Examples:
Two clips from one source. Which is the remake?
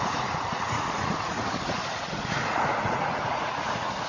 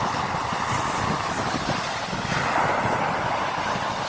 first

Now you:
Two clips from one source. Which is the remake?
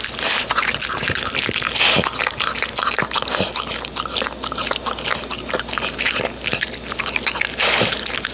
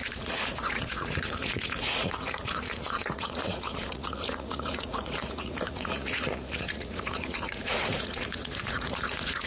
second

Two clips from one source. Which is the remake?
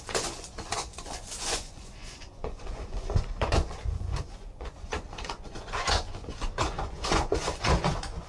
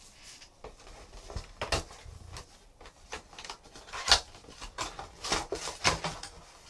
first